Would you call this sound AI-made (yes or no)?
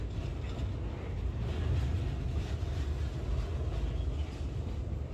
no